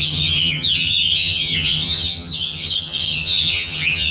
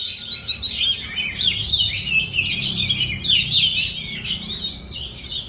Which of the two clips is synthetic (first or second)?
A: first